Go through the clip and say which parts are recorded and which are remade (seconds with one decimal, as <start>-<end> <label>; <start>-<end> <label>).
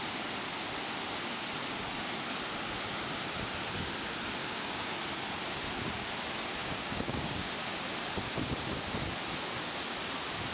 0.0-4.4 recorded; 4.4-5.0 remade; 5.0-6.6 recorded; 6.6-7.5 remade; 7.5-10.5 recorded